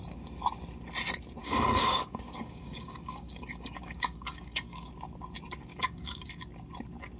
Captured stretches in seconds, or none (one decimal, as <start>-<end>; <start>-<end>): 0.0-1.4; 4.9-5.7; 6.4-7.2